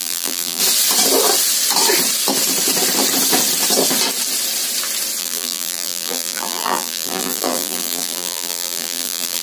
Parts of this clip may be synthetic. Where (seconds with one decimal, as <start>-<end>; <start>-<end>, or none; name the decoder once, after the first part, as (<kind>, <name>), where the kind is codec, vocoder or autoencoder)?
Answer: 0.0-0.6 (vocoder, BigVGAN v2); 5.2-9.4